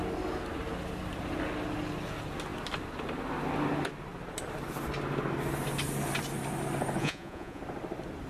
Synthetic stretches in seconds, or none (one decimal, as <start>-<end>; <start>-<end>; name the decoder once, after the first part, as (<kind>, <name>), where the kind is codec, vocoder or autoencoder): 7.0-7.6 (vocoder, Vocos)